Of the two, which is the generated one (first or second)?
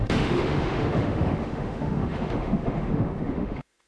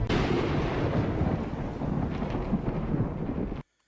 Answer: first